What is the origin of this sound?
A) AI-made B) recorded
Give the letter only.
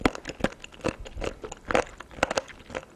B